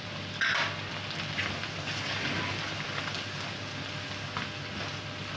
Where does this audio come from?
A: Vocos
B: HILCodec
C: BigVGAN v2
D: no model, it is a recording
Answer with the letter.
D